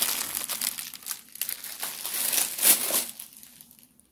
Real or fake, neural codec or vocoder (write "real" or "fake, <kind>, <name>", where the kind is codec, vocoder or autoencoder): real